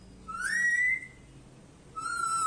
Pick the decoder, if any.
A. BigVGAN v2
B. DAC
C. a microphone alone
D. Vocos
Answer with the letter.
C